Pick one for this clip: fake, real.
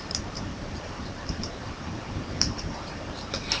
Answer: fake